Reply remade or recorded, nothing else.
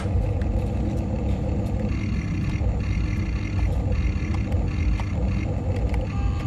recorded